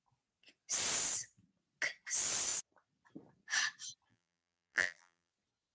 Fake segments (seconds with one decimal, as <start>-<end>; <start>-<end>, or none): 4.1-5.3